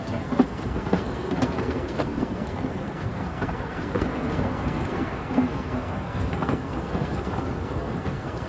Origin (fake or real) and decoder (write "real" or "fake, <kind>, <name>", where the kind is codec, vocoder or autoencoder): fake, codec, SNAC